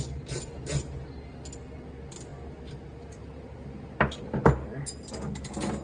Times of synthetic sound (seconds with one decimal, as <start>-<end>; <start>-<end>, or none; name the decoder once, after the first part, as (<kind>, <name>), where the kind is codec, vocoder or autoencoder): none